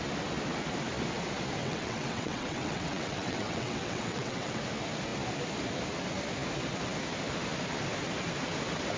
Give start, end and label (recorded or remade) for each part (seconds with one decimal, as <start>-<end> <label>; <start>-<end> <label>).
0.0-1.6 recorded; 1.6-4.6 remade; 4.6-9.0 recorded